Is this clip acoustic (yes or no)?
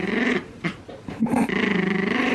no